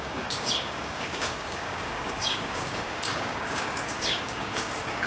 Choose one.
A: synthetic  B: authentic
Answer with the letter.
A